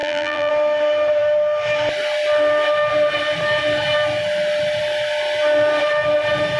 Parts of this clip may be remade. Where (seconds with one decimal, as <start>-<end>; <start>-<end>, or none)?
0.0-0.5